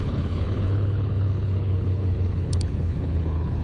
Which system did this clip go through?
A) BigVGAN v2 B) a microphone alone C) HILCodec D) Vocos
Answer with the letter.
C